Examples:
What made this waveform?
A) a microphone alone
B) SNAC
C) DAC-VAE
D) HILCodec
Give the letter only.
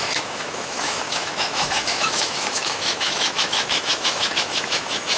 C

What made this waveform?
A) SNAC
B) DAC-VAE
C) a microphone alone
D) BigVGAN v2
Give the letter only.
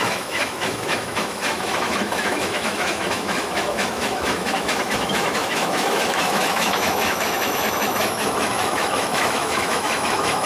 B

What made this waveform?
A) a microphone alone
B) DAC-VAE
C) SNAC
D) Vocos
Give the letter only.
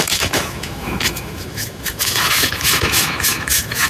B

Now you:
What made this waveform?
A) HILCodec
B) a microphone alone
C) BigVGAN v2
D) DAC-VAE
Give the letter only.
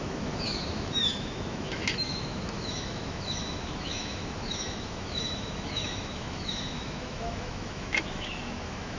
D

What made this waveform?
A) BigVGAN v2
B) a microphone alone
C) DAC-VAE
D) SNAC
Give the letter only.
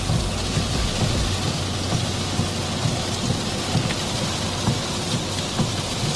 B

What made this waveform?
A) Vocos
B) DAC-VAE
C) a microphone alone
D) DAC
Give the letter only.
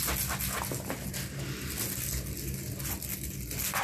C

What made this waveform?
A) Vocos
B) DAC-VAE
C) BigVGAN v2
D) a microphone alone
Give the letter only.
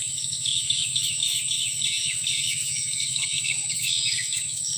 B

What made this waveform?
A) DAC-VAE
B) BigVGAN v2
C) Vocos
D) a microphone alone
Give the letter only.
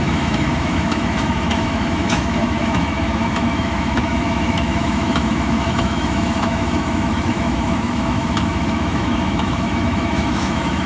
A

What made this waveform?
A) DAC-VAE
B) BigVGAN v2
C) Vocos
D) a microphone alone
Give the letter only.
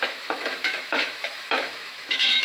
A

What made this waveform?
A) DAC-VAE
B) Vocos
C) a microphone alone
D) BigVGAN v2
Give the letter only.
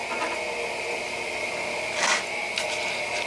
C